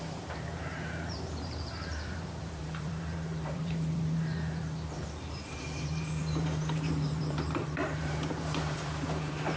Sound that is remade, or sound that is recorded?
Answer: remade